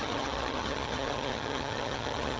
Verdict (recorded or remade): remade